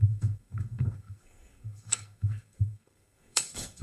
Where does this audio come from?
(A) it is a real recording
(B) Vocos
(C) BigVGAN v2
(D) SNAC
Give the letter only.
D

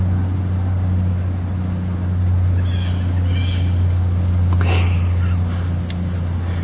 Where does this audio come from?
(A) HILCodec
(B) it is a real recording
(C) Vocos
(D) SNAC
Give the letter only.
B